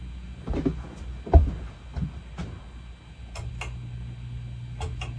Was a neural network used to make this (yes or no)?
no